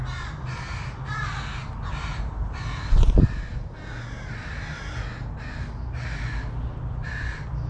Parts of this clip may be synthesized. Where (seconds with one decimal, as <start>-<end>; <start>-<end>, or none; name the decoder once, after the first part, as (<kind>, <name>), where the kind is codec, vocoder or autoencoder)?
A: none